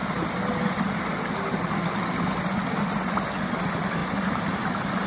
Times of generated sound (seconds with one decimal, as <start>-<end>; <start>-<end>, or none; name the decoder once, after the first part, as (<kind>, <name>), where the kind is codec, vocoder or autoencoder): 4.0-5.1 (vocoder, BigVGAN v2)